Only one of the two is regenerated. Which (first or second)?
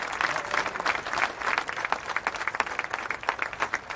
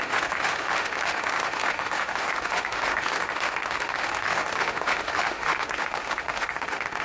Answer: second